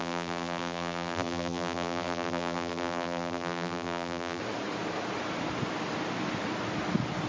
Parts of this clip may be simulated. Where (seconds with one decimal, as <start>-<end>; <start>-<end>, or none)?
0.0-4.4